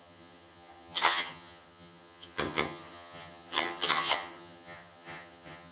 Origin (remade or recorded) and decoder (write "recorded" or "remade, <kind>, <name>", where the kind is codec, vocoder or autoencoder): remade, vocoder, HiFi-GAN